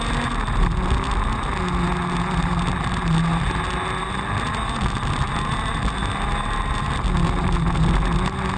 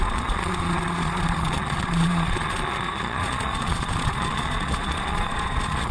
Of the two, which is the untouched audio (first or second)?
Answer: first